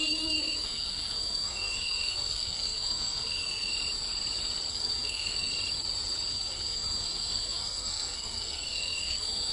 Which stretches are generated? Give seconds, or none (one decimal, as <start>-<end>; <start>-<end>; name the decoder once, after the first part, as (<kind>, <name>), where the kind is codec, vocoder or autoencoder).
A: 0.0-3.7 (codec, SNAC); 4.7-5.5; 6.3-9.5